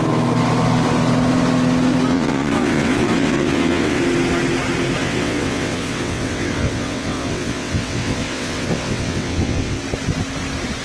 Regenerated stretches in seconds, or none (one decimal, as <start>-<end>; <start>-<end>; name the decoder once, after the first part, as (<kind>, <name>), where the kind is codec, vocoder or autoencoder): 2.1-4.0 (vocoder, WaveNeXt); 5.0-9.8